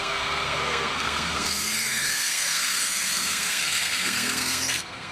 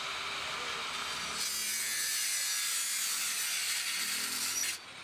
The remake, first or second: first